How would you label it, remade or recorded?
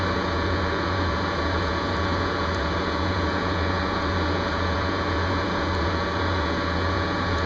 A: remade